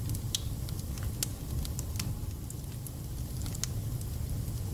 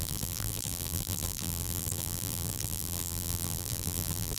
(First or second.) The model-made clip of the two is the second